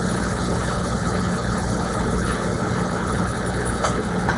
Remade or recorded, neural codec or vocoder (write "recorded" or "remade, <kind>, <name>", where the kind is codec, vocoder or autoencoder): remade, codec, HILCodec